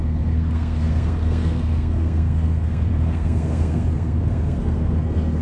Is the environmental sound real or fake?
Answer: fake